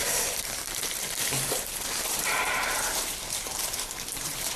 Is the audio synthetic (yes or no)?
yes